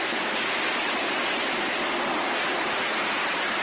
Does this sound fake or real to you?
real